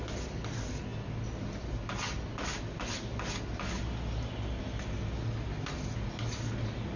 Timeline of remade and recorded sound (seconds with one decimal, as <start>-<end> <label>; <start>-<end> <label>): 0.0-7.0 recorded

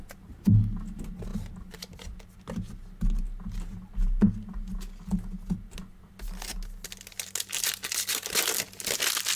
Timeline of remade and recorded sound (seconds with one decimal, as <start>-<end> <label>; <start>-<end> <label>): 0.0-9.4 recorded

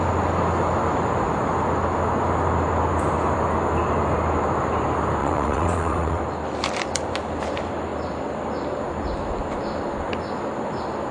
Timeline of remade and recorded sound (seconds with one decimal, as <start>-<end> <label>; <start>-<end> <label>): 0.0-5.2 recorded; 5.2-6.2 remade; 6.2-11.1 recorded